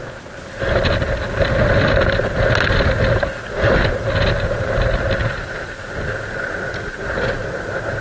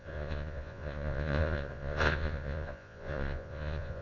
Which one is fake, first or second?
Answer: second